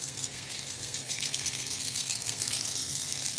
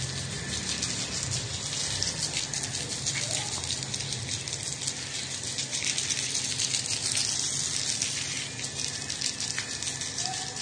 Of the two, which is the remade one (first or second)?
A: first